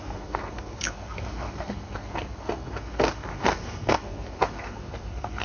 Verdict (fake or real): fake